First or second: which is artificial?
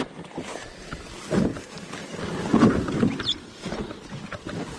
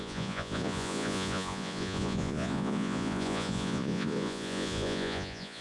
second